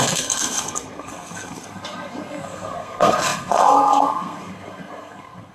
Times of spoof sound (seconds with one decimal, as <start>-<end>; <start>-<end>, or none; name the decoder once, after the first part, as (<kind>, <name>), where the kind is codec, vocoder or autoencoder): 0.0-5.5 (codec, SNAC)